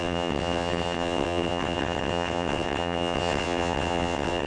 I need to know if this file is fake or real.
fake